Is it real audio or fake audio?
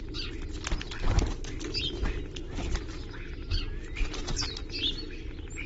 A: real